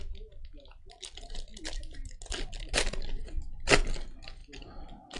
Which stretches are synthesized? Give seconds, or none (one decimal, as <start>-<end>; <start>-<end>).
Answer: none